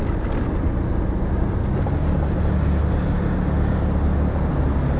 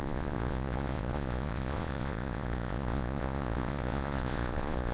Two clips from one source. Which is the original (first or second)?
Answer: first